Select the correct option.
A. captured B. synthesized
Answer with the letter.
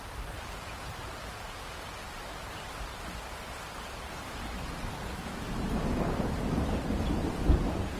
B